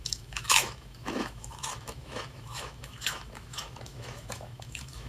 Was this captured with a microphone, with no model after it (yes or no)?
no